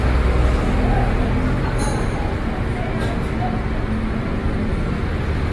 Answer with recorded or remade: recorded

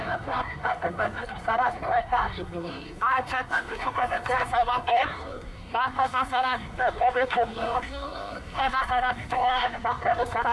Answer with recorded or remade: remade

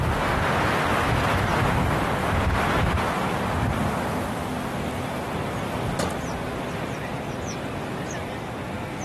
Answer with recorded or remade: recorded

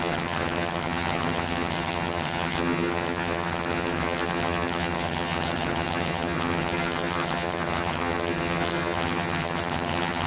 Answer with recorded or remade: remade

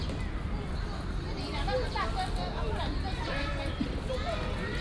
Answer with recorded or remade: recorded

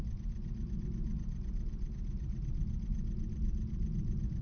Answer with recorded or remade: recorded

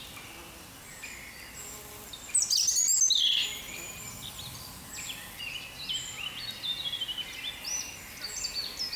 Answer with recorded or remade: recorded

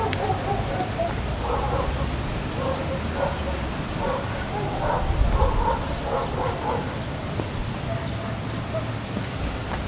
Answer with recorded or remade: recorded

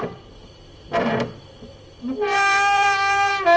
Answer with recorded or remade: remade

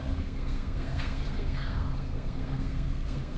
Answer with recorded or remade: remade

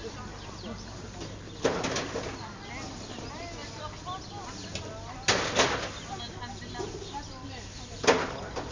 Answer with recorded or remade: recorded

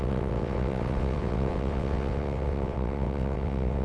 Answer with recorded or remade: remade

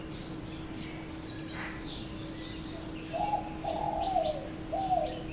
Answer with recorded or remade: recorded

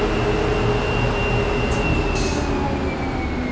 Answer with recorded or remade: recorded